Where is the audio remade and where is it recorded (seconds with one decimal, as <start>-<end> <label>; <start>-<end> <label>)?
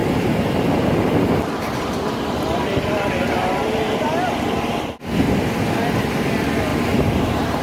0.0-1.2 remade; 1.2-6.7 recorded; 6.7-7.6 remade